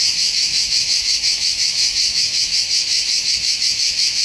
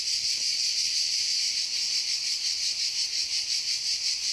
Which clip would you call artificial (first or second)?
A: first